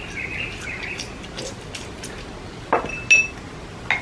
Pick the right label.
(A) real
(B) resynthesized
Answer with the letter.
A